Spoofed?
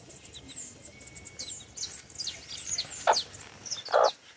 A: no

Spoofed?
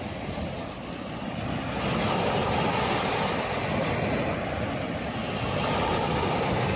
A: no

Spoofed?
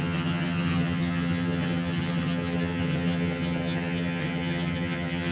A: yes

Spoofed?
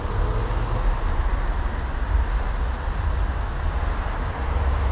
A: no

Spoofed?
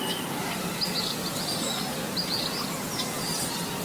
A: no